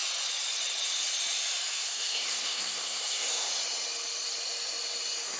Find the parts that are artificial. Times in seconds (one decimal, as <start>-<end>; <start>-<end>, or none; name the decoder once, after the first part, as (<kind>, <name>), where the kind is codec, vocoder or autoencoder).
1.7-3.5 (codec, SNAC)